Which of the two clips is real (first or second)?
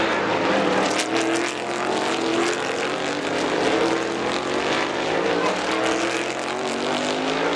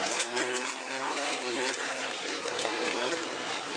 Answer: first